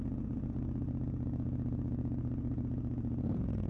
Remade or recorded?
remade